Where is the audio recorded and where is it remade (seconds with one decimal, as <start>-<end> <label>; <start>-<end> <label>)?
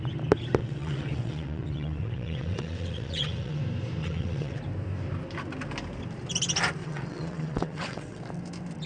0.0-0.6 recorded; 0.6-3.6 remade; 3.6-4.0 recorded; 4.0-4.6 remade; 4.6-6.8 recorded; 6.8-8.2 remade; 8.2-8.9 recorded